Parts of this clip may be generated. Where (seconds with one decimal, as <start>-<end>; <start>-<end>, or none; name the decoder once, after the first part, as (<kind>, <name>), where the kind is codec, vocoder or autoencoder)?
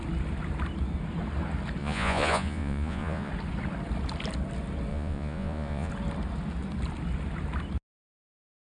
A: 1.8-3.3 (vocoder, Vocos); 4.9-5.9